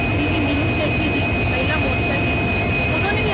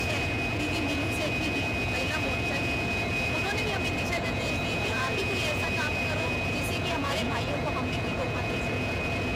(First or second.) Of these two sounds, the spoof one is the second